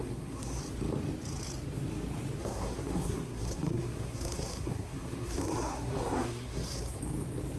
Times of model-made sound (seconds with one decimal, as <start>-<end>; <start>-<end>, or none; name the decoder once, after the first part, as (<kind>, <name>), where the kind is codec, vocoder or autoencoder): 0.0-0.6 (codec, SNAC); 2.4-7.0